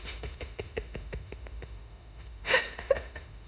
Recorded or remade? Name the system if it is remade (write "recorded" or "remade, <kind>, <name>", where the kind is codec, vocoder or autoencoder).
remade, autoencoder, DAC-VAE